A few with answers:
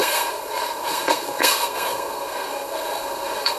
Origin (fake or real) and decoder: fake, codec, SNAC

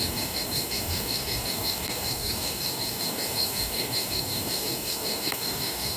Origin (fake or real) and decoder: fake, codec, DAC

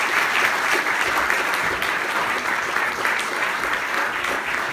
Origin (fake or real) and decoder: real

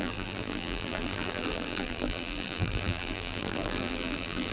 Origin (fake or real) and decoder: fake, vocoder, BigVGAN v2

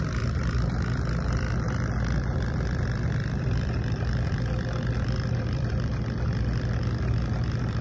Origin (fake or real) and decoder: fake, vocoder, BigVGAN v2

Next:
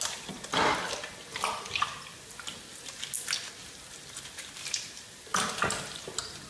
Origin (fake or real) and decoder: real